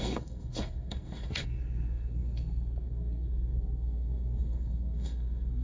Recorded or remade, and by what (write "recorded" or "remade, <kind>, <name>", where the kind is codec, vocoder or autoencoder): remade, codec, SNAC